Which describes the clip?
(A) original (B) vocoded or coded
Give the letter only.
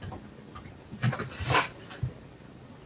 A